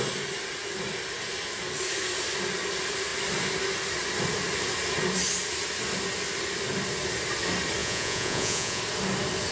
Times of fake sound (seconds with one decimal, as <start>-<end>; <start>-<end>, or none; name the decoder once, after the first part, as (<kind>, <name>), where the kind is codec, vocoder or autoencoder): 7.8-8.8 (vocoder, Vocos)

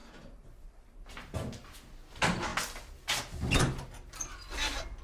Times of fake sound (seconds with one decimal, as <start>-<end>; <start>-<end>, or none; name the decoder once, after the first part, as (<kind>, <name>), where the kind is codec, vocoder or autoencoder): none

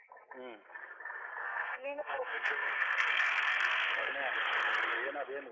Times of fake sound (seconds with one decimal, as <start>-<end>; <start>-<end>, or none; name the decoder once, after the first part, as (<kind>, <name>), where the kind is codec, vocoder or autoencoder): 1.4-4.1 (codec, SNAC)

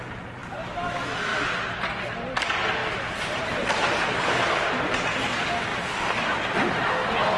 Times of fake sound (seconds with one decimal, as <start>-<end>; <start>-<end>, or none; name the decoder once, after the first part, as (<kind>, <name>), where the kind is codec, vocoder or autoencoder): 2.8-4.7 (vocoder, BigVGAN v2)

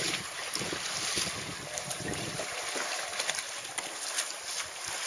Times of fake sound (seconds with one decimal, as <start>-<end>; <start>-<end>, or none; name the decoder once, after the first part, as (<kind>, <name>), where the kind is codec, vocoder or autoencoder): 0.0-0.4 (vocoder, BigVGAN v2); 1.8-3.1